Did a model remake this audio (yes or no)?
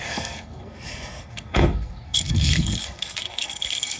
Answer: yes